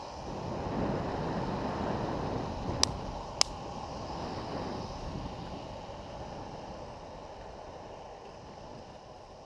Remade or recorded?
recorded